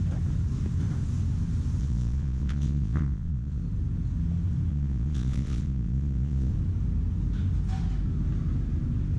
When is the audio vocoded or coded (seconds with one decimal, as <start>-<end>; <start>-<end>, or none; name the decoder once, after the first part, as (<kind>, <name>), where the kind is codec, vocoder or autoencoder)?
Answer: 1.8-3.6 (vocoder, Vocos); 4.7-6.5